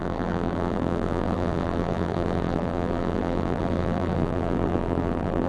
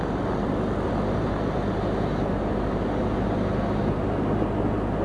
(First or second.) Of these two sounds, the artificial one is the first